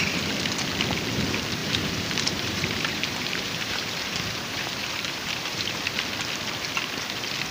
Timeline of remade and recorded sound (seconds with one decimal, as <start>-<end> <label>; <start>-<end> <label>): 0.0-1.6 recorded; 1.6-5.8 remade; 5.8-7.5 recorded